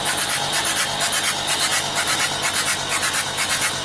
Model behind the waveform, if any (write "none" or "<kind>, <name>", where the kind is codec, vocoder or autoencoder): none